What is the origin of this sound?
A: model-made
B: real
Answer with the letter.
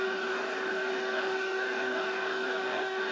A